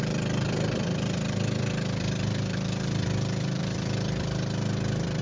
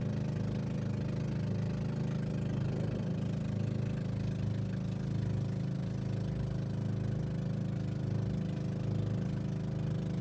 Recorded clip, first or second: second